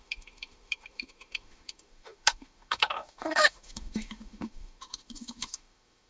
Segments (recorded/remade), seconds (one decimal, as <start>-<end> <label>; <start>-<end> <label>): 0.0-6.1 remade